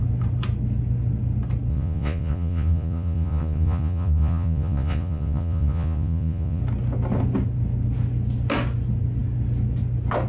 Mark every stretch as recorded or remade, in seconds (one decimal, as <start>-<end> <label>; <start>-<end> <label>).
0.0-1.7 recorded; 1.7-6.6 remade; 6.6-10.3 recorded